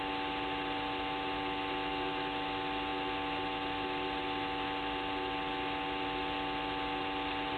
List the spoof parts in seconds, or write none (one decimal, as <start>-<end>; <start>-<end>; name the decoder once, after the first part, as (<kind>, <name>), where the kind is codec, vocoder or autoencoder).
none